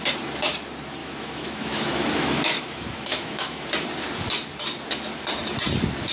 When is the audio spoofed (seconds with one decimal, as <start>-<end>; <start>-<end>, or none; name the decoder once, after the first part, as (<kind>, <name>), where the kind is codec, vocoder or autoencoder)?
1.0-3.7 (autoencoder, DAC-VAE)